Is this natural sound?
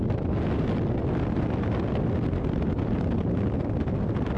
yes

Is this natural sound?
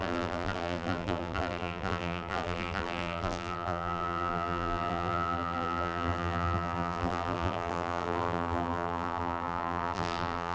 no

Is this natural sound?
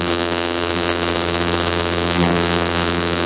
no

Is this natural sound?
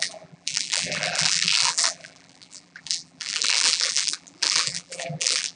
no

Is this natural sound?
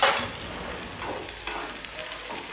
yes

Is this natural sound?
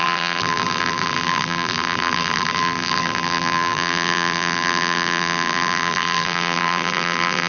no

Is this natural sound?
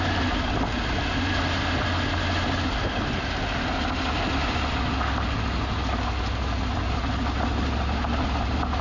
yes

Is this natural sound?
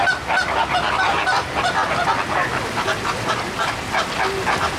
no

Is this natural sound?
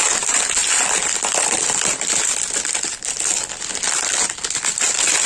yes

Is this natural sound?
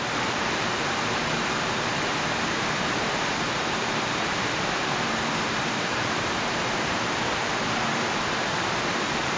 no